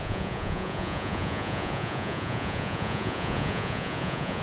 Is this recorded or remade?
remade